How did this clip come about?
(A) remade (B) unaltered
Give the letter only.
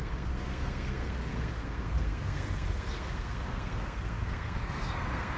A